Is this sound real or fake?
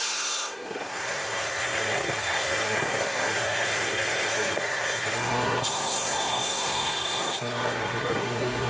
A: fake